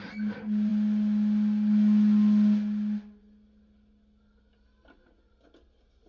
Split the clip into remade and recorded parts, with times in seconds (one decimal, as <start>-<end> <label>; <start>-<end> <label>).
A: 0.0-6.1 recorded